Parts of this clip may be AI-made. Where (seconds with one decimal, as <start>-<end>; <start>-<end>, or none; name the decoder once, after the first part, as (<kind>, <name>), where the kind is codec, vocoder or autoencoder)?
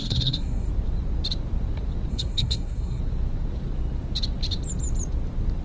0.0-0.7 (codec, SNAC); 2.1-3.0